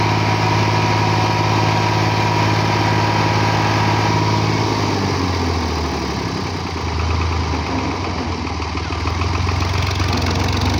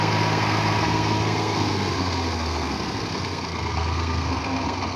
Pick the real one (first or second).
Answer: first